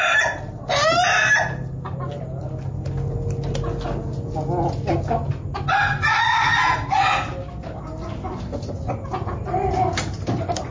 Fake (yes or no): no